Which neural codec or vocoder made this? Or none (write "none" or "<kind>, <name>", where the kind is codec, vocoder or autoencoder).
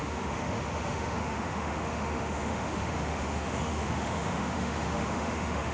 autoencoder, DAC-VAE